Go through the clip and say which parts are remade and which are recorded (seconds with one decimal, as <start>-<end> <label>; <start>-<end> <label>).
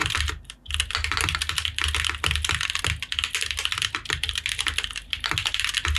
0.0-6.0 recorded